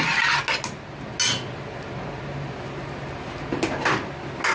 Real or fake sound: real